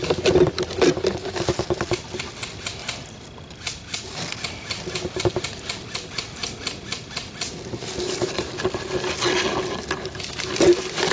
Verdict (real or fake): real